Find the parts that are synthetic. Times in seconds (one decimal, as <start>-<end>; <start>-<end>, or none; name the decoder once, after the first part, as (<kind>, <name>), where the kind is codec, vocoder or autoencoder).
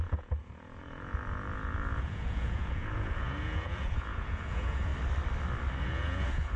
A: 0.0-4.9 (vocoder, Vocos); 5.8-6.6